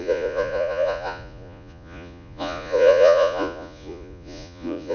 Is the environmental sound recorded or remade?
remade